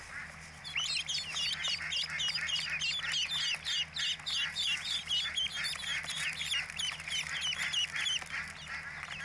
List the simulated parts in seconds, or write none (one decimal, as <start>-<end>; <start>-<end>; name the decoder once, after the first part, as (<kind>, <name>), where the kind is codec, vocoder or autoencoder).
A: none